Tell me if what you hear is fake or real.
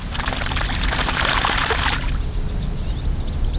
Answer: real